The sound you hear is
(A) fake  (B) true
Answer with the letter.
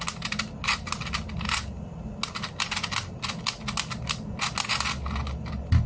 B